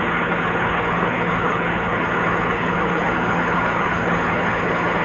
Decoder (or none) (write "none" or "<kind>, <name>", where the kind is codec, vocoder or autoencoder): codec, HILCodec